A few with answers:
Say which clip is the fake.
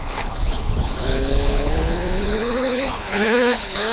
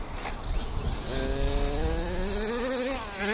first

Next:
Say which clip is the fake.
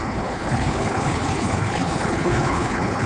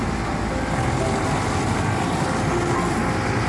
first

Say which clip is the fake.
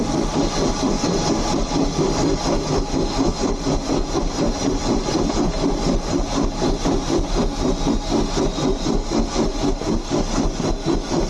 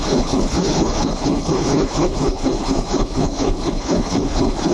second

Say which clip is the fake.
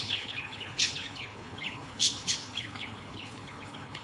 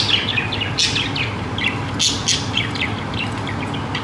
first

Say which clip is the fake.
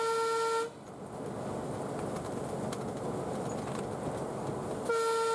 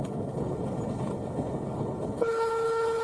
second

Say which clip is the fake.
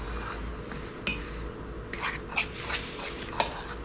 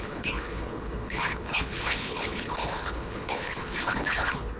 second